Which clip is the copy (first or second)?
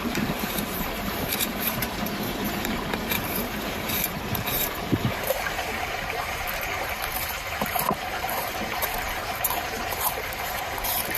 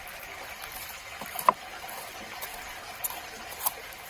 first